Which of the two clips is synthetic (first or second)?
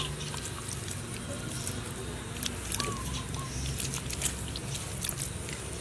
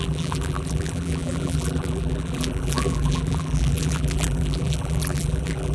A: second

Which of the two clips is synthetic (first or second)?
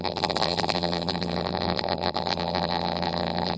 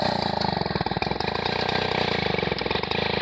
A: first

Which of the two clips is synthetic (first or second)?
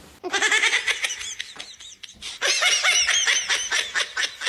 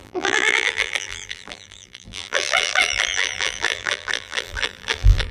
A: second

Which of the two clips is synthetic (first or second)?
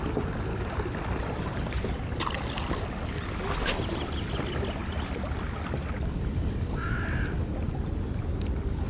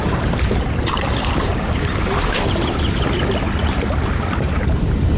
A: second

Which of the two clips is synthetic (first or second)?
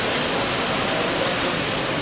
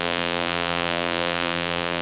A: second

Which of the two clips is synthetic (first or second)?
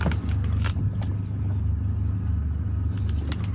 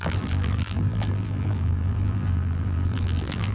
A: second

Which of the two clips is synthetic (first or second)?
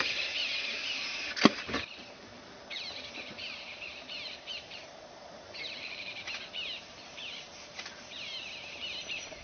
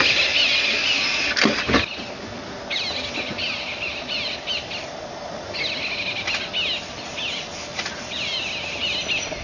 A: first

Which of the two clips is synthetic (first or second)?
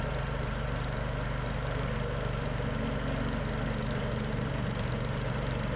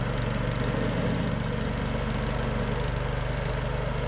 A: first